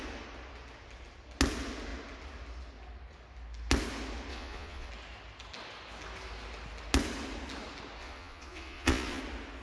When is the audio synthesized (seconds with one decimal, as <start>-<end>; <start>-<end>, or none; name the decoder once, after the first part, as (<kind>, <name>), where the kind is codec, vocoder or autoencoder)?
4.3-4.9 (vocoder, Vocos); 8.0-9.2